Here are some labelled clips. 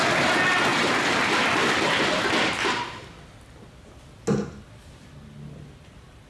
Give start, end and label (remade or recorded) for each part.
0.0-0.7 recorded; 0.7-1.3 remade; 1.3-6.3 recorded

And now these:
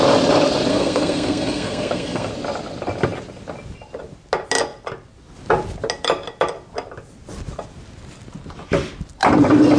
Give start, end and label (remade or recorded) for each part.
0.0-0.7 recorded; 0.7-2.3 remade; 2.3-9.8 recorded

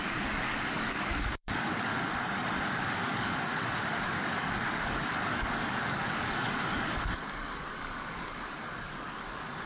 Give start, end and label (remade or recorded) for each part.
0.0-1.9 remade; 1.9-2.8 recorded; 2.8-9.7 remade

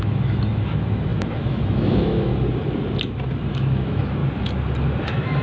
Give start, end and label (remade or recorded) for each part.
0.0-2.3 remade; 2.3-3.5 recorded; 3.5-4.2 remade; 4.2-5.0 recorded; 5.0-5.4 remade

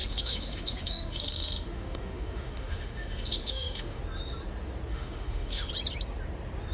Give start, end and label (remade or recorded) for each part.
0.0-4.0 remade; 4.0-4.9 recorded; 4.9-5.7 remade; 5.7-6.7 recorded

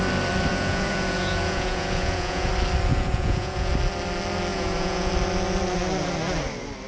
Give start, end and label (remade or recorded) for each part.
0.0-0.5 recorded; 0.5-2.5 remade; 2.5-2.9 recorded; 2.9-3.7 remade; 3.7-4.5 recorded; 4.5-5.1 remade; 5.1-6.9 recorded